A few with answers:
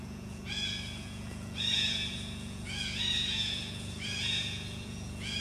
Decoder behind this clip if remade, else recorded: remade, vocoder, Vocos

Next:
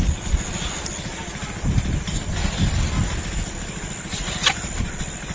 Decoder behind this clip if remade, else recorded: recorded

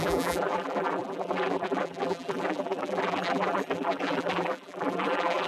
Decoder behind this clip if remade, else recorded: remade, vocoder, BigVGAN v2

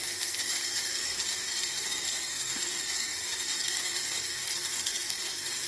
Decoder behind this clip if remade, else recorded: remade, codec, SNAC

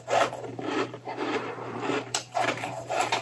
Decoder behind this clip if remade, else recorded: remade, vocoder, BigVGAN v2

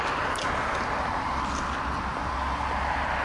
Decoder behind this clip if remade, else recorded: recorded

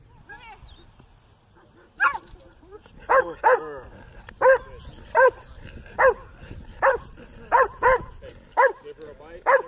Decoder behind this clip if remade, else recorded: recorded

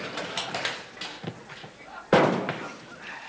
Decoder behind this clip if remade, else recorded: recorded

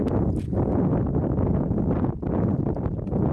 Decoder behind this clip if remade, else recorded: recorded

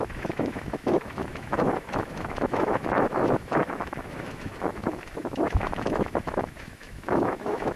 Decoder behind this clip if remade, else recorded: remade, autoencoder, DAC-VAE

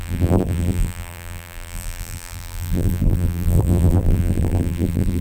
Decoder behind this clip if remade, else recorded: remade, vocoder, BigVGAN v2